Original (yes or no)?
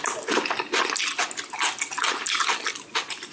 yes